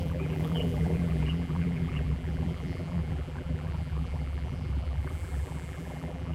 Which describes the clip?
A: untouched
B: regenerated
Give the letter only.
B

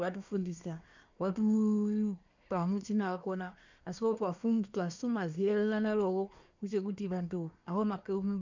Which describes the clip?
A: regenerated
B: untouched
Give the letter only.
A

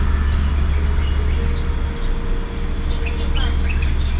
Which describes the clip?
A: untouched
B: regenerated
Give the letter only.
A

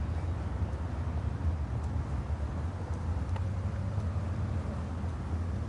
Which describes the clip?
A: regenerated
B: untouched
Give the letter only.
B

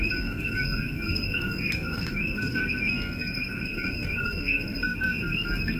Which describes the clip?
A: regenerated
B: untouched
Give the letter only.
A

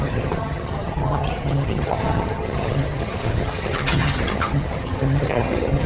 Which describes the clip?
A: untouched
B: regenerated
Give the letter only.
B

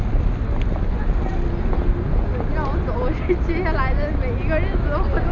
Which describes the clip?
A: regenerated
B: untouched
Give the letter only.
B